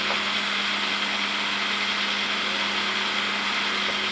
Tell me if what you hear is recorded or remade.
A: recorded